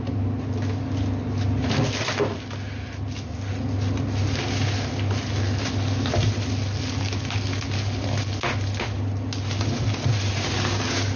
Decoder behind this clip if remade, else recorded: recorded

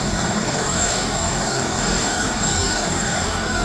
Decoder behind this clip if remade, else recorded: remade, codec, DAC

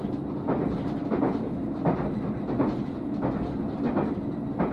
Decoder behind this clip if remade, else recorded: recorded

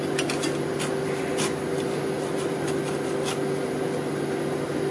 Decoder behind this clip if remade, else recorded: recorded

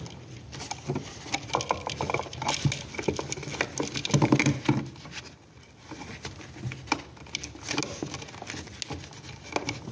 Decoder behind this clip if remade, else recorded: recorded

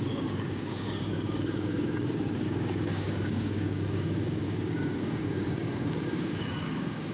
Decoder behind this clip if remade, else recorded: remade, codec, DAC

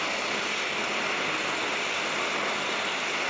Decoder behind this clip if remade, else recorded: recorded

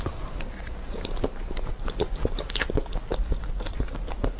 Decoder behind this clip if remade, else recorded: recorded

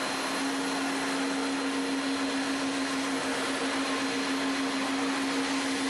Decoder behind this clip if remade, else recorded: recorded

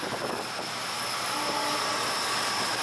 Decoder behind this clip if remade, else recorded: recorded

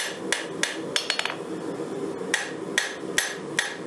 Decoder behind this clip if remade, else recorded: recorded